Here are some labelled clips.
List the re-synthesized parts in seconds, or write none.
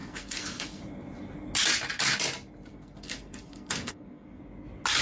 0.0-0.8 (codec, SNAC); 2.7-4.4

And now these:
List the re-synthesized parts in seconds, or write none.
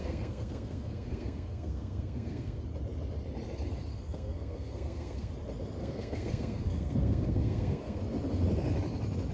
0.0-2.6 (codec, SNAC); 3.9-5.3; 5.8-8.0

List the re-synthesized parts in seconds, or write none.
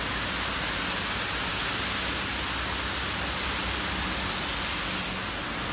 none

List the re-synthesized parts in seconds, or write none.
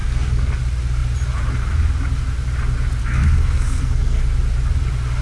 0.0-0.6 (codec, SNAC); 3.0-4.2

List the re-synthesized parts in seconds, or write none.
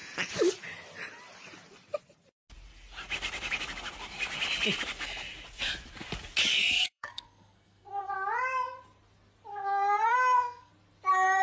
6.5-8.1 (codec, SNAC); 9.5-10.7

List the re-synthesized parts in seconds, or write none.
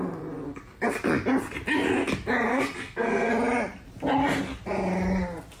2.5-3.3 (codec, SNAC)